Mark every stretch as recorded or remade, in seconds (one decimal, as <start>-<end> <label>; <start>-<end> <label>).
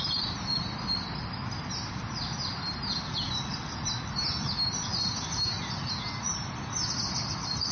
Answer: 0.0-7.7 recorded